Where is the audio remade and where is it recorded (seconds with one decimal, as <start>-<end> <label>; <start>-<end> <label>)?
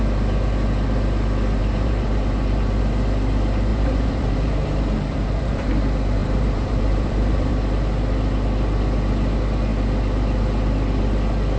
0.0-1.6 recorded; 1.6-2.8 remade; 2.8-3.7 recorded; 3.7-5.7 remade; 5.7-6.2 recorded; 6.2-7.5 remade; 7.5-11.6 recorded